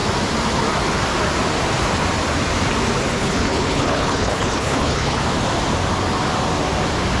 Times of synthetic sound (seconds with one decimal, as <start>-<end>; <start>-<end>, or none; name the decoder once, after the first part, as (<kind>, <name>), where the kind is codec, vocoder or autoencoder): 3.1-5.2 (codec, HILCodec)